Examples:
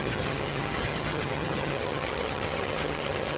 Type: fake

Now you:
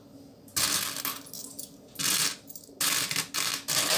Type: real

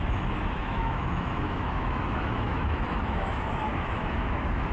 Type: fake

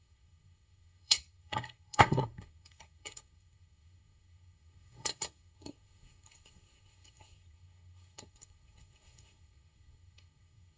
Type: fake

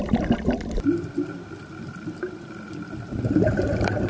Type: real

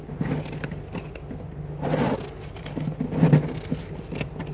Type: real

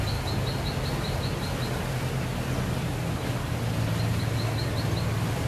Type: real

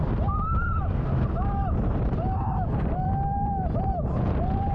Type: fake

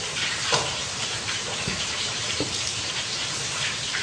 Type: fake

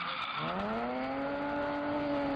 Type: real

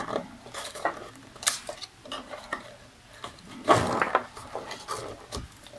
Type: real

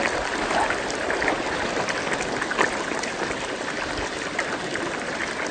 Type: real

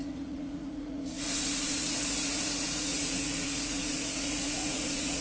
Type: fake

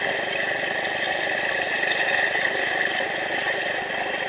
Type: real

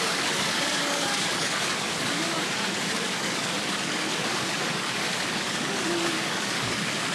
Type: fake